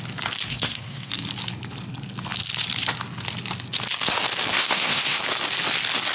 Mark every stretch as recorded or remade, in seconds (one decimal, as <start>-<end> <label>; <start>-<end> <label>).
0.0-0.5 recorded; 0.5-1.1 remade; 1.1-4.5 recorded; 4.5-5.2 remade; 5.2-6.1 recorded